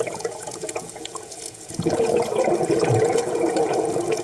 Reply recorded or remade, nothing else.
remade